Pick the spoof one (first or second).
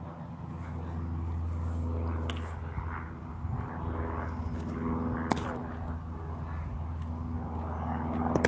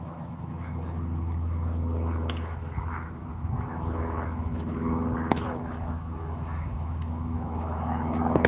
second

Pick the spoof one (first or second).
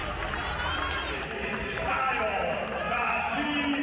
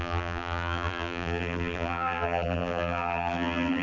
second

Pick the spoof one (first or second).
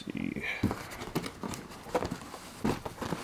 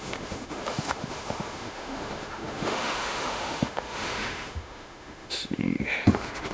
second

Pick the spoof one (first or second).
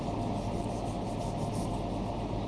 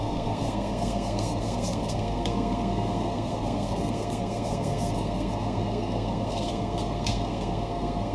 second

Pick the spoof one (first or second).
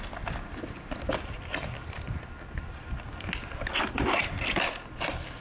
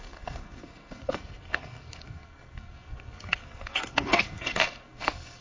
second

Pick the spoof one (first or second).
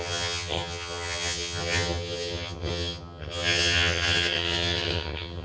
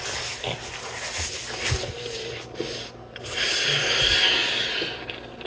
first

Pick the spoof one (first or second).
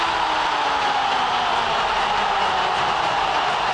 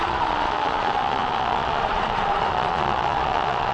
second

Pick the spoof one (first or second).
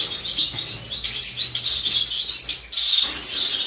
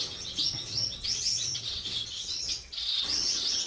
second